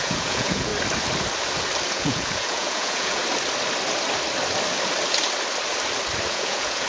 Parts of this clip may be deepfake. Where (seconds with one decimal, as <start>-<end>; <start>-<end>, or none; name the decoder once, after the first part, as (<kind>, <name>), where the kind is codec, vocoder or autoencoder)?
0.0-0.7 (vocoder, Vocos); 1.9-3.2; 6.3-6.9